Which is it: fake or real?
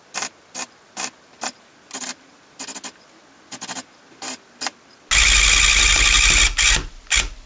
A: real